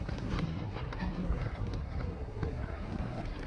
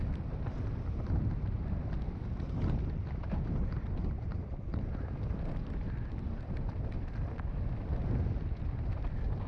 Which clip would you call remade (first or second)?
first